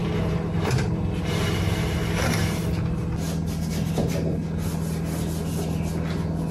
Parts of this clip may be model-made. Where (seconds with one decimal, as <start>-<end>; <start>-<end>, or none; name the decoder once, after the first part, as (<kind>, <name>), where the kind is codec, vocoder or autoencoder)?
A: none